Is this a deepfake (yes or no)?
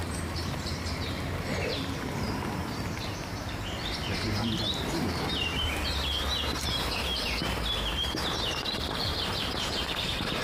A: yes